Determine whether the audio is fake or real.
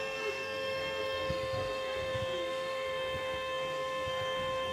fake